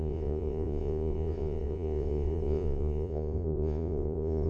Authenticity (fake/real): fake